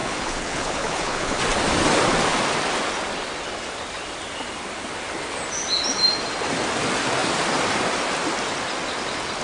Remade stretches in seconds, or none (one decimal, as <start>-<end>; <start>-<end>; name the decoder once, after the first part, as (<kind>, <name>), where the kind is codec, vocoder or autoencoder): 0.0-1.4 (codec, HILCodec)